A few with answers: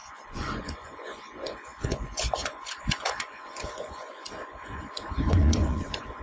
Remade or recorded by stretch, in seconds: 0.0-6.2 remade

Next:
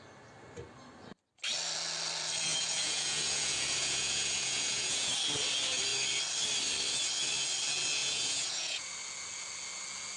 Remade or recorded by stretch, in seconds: 0.0-2.5 recorded; 2.5-5.1 remade; 5.1-8.0 recorded; 8.0-8.9 remade; 8.9-10.2 recorded

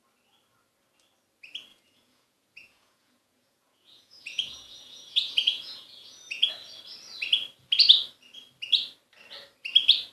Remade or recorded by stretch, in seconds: 0.0-1.7 recorded; 1.7-6.5 remade; 6.5-10.1 recorded

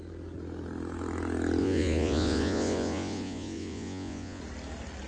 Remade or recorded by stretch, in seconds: 0.0-1.6 recorded; 1.6-4.4 remade; 4.4-5.1 recorded

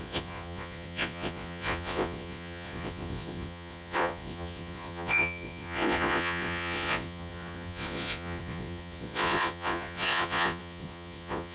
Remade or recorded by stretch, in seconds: 0.0-11.5 remade

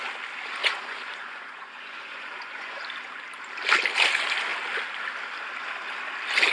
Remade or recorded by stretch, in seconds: 0.0-0.6 recorded; 0.6-2.8 remade; 2.8-6.5 recorded

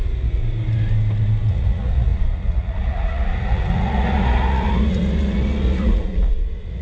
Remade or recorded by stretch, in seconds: 0.0-0.4 remade; 0.4-1.5 recorded; 1.5-6.8 remade

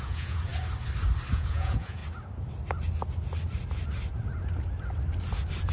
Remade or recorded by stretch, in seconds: 0.0-0.5 remade; 0.5-1.3 recorded; 1.3-2.0 remade; 2.0-5.7 recorded